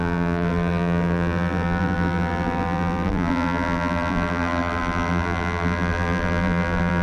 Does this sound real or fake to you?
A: fake